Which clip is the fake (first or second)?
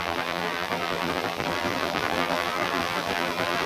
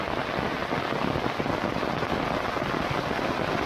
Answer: first